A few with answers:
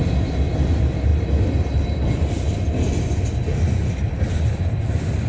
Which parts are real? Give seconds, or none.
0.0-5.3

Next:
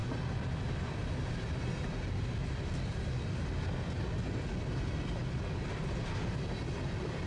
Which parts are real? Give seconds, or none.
0.0-7.3

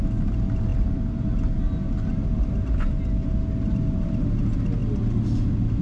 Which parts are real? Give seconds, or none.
0.0-5.8

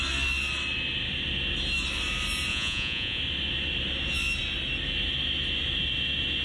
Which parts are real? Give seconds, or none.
0.0-2.5; 3.2-6.4